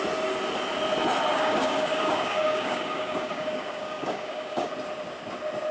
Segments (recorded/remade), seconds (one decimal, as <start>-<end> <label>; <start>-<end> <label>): 0.0-1.3 recorded; 1.3-4.7 remade; 4.7-5.7 recorded